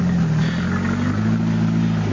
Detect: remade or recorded recorded